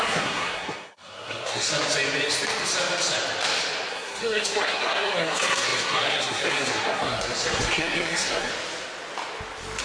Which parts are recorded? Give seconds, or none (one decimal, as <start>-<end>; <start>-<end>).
1.7-3.9; 8.5-9.8